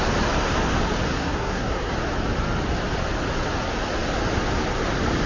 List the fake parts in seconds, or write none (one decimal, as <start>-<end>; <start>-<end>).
1.1-1.9